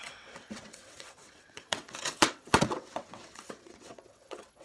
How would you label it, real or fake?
fake